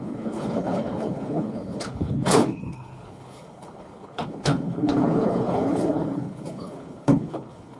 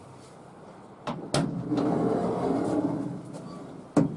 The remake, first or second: first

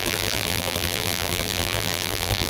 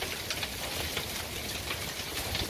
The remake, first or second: first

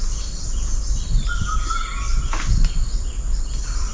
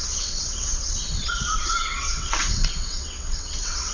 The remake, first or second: second